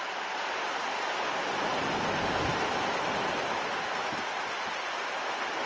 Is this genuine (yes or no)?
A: yes